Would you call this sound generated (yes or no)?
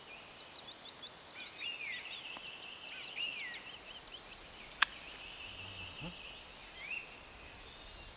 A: no